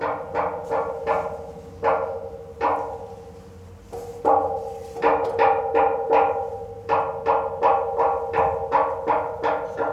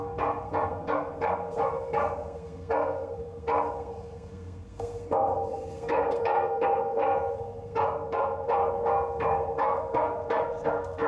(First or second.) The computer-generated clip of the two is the second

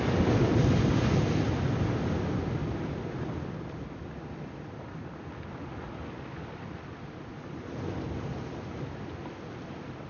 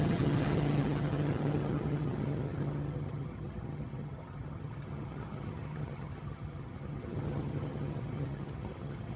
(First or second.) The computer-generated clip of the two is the second